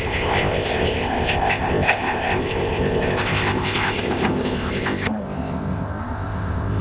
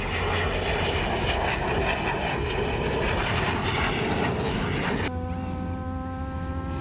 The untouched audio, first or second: second